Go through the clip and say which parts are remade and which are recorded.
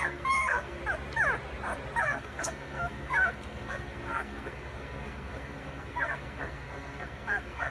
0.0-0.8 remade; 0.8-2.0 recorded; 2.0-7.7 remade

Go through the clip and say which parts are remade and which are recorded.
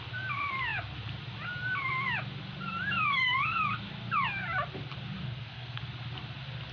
0.0-5.2 recorded; 5.2-5.8 remade; 5.8-6.7 recorded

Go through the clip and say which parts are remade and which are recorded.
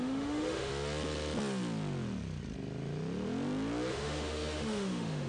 0.0-0.7 remade; 0.7-3.9 recorded; 3.9-5.3 remade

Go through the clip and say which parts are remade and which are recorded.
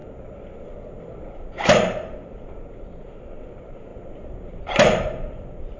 0.0-1.3 recorded; 1.3-5.8 remade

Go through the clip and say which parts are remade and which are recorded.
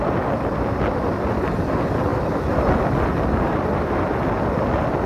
0.0-5.1 recorded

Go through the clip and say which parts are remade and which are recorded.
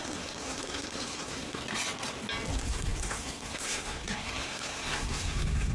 0.0-1.6 remade; 1.6-2.5 recorded; 2.5-5.7 remade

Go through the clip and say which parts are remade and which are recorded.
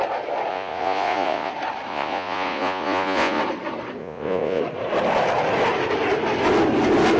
0.0-0.5 recorded; 0.5-1.5 remade; 1.5-1.9 recorded; 1.9-3.4 remade; 3.4-4.0 recorded; 4.0-4.6 remade; 4.6-7.2 recorded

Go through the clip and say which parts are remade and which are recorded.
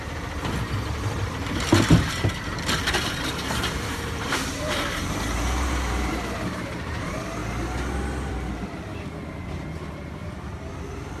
0.0-7.4 remade; 7.4-9.7 recorded; 9.7-11.2 remade